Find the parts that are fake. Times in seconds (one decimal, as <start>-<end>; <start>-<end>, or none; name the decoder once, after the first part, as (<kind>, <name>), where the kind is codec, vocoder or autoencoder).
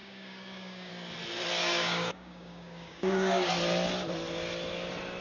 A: 0.0-0.9 (codec, DAC); 1.6-3.5